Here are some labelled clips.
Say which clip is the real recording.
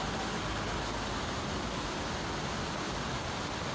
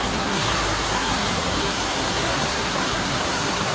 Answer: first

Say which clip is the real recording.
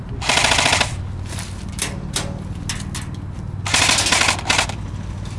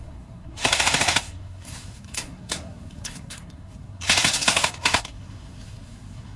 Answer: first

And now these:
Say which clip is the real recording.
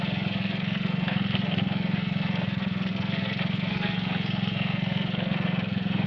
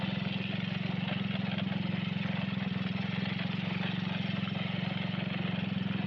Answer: second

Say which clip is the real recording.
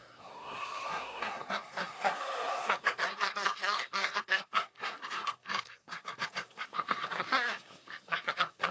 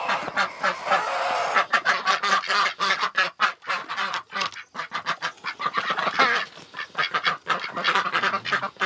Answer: second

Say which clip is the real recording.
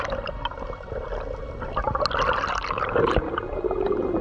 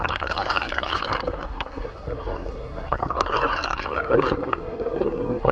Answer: first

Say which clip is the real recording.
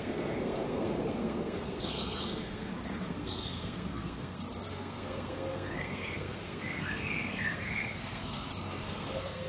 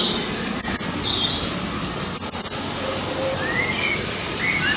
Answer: second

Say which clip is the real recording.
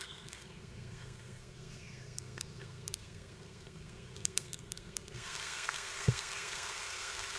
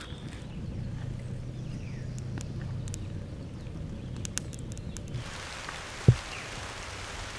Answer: second